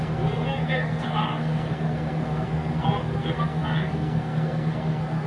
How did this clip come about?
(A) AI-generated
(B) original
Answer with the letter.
A